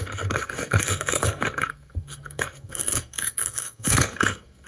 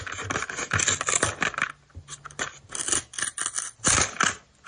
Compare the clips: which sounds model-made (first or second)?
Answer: first